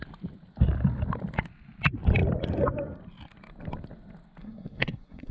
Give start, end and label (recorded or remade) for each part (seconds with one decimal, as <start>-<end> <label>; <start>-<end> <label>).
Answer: 0.0-4.4 recorded; 4.4-5.3 remade